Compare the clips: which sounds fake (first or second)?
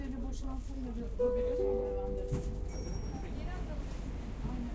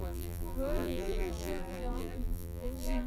second